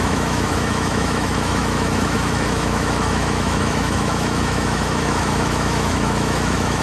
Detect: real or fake fake